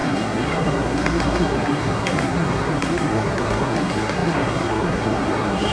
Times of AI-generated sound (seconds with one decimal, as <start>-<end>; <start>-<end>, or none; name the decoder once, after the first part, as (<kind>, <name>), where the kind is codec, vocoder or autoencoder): 0.0-5.7 (codec, SNAC)